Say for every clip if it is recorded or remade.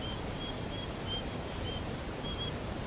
recorded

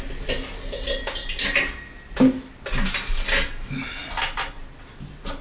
recorded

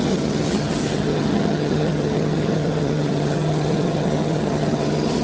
remade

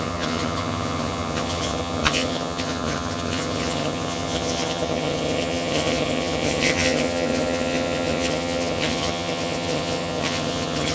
remade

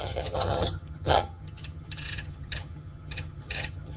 remade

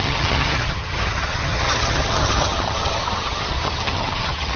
remade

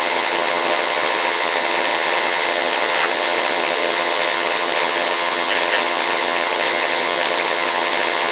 remade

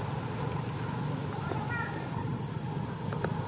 recorded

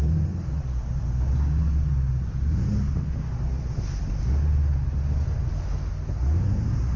recorded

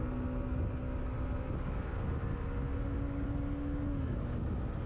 recorded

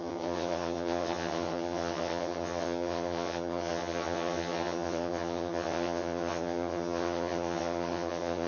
remade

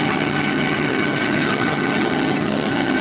remade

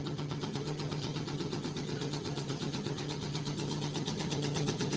remade